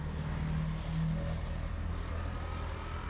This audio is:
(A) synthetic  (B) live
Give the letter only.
B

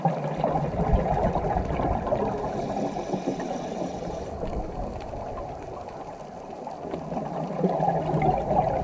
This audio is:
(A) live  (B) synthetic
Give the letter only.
A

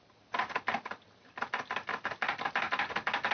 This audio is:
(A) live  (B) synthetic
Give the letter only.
A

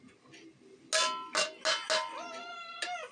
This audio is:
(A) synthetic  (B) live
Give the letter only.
B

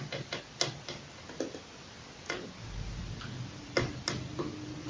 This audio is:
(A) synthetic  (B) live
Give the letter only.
B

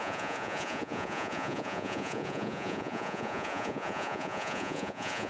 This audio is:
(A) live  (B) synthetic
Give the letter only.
B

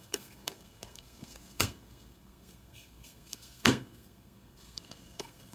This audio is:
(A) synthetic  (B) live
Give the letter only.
A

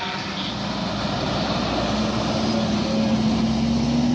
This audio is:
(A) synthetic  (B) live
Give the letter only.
B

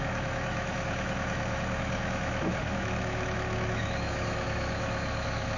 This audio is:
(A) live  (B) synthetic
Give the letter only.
B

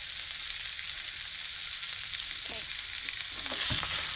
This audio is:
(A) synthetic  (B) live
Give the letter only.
B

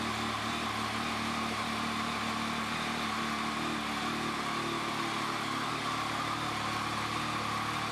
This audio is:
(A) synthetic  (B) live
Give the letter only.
B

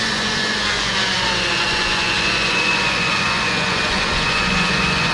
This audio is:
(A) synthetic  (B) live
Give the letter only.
A